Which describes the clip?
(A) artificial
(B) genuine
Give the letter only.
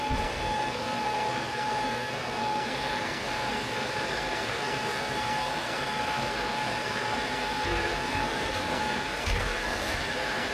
A